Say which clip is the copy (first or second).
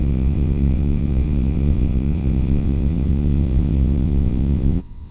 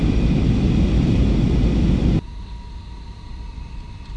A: first